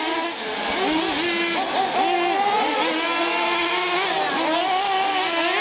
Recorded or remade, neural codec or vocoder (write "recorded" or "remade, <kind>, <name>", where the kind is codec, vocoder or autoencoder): recorded